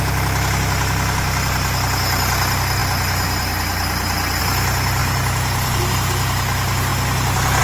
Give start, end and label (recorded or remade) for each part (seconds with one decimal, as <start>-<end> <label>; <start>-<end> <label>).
0.0-5.0 recorded; 5.0-5.8 remade; 5.8-7.6 recorded